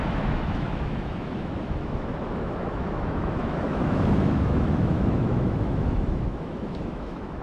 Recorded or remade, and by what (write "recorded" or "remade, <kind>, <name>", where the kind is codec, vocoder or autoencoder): remade, autoencoder, DAC-VAE